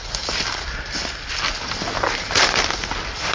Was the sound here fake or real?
real